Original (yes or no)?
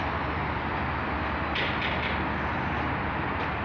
yes